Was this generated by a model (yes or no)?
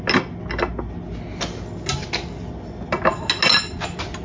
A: no